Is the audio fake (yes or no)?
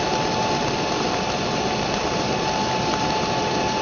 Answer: no